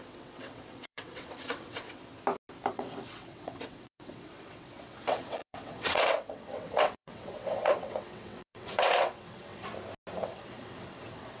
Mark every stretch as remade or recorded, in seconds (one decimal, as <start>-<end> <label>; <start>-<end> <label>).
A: 0.0-2.1 remade; 2.1-2.7 recorded; 2.7-9.7 remade; 9.7-10.2 recorded; 10.2-11.4 remade